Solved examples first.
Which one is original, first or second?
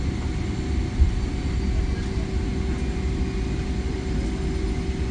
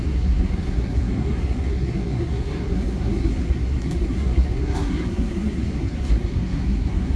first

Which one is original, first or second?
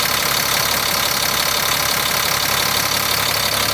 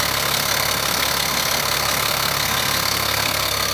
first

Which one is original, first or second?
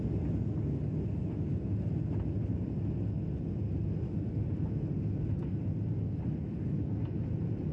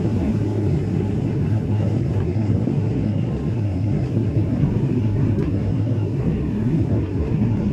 first